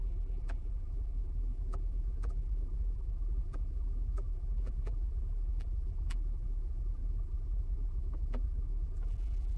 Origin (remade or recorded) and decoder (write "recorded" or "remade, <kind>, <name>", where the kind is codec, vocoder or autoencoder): remade, vocoder, BigVGAN v2